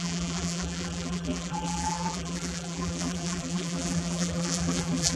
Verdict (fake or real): fake